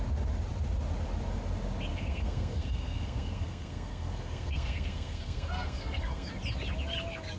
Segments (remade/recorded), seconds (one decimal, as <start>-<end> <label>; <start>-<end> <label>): 0.0-1.9 recorded; 1.9-6.3 remade; 6.3-7.4 recorded